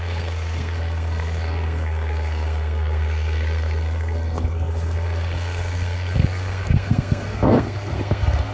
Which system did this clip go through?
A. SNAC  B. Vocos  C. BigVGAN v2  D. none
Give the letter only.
A